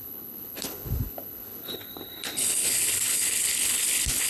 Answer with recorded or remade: remade